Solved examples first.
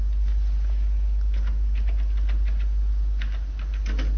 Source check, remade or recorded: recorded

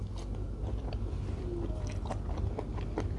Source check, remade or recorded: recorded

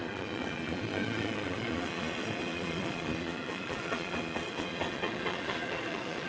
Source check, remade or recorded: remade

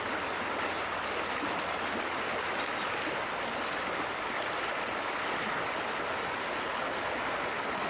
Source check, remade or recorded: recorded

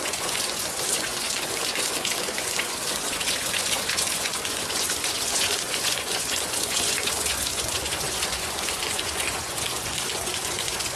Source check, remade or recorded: remade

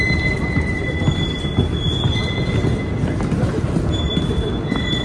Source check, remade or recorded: recorded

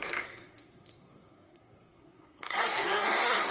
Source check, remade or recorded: remade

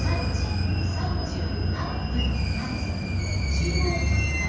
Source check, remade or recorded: recorded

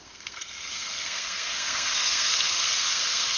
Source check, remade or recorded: remade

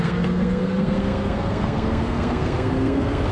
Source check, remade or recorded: remade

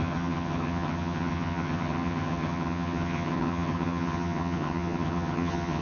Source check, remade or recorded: remade